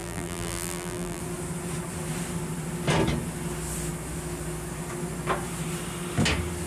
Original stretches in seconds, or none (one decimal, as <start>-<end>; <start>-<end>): 1.2-6.7